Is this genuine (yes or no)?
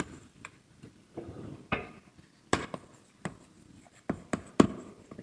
no